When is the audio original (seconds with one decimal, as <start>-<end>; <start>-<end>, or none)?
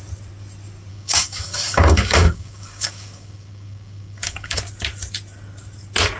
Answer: 0.0-0.9; 4.6-6.2